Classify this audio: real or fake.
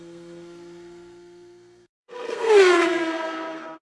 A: fake